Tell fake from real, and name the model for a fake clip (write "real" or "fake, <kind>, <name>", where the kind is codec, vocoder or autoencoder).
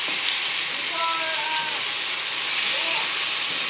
real